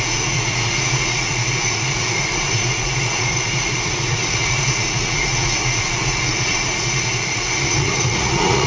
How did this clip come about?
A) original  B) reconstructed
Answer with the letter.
B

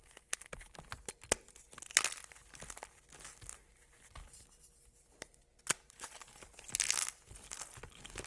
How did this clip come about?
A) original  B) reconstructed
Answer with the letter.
A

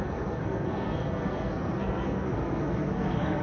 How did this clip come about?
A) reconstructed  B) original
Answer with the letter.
A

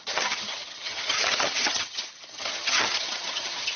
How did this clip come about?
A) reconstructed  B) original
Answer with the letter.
A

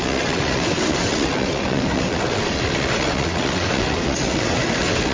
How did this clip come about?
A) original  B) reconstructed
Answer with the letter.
B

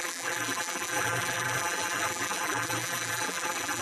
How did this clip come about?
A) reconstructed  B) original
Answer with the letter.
A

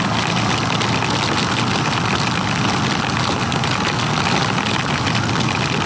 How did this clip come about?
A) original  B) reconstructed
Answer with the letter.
A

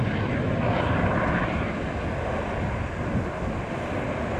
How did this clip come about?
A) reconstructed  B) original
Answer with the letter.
A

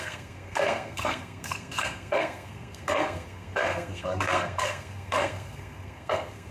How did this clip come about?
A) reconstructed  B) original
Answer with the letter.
A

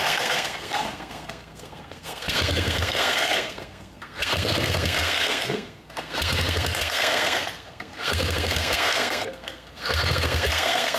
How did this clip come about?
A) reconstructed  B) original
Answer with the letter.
A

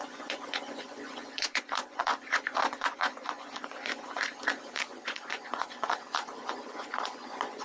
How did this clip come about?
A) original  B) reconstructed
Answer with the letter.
B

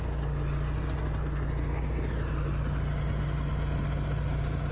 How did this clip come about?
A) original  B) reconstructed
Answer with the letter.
A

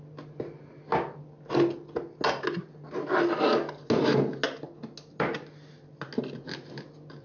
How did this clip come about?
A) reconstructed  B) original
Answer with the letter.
B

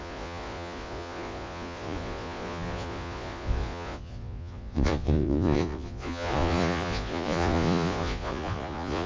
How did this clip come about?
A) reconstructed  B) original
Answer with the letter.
A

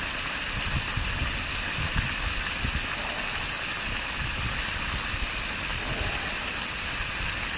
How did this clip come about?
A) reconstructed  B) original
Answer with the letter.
B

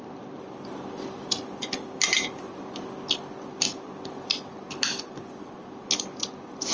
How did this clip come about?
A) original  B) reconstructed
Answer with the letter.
A